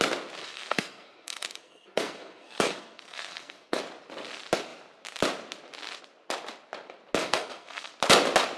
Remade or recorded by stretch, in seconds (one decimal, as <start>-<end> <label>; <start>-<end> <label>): 0.0-0.4 recorded; 0.4-3.8 remade; 3.8-7.2 recorded; 7.2-7.9 remade; 7.9-8.6 recorded